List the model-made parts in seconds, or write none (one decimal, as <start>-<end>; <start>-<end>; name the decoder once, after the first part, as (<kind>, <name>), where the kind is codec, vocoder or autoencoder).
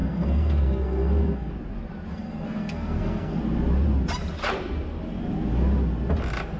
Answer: 0.0-1.5 (codec, SNAC); 2.1-3.4